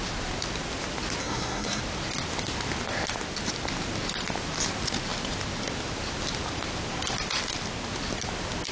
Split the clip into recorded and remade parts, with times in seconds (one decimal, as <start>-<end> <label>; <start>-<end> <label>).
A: 0.0-1.2 recorded; 1.2-1.8 remade; 1.8-8.7 recorded